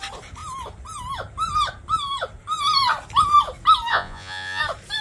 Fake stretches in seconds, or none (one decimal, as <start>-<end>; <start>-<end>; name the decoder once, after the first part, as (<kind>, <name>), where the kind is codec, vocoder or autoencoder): 3.9-4.6 (vocoder, Vocos)